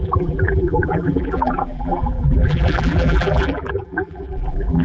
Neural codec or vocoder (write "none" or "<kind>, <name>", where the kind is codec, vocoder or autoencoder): vocoder, BigVGAN v2